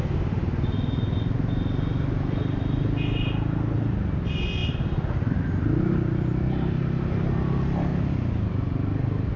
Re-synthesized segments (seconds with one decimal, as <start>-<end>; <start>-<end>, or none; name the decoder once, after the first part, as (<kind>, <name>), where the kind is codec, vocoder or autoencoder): none